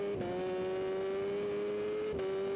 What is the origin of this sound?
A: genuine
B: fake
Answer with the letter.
A